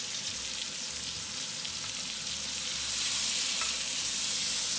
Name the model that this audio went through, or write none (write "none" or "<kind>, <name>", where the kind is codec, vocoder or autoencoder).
none